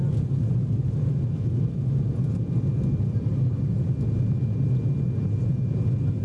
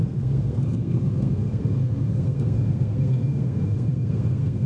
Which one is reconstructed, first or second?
second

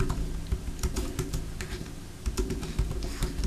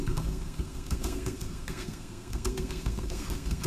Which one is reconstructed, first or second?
second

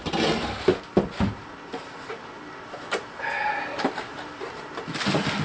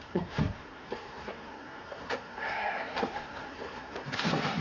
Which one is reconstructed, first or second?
second